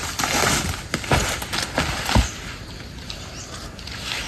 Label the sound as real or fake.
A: real